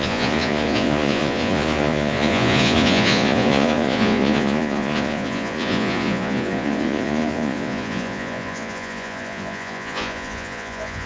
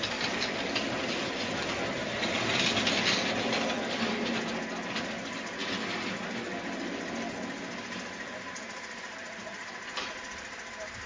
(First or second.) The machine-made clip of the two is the first